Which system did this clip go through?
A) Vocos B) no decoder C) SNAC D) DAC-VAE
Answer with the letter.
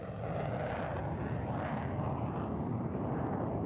B